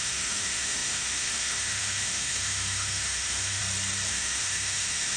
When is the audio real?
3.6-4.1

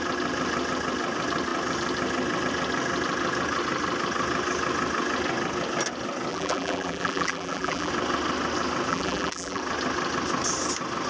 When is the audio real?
0.0-6.3; 7.9-8.9; 9.6-11.1

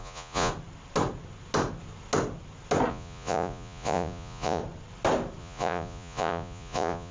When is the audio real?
0.5-2.9; 4.6-5.4